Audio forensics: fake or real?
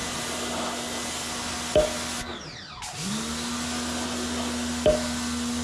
real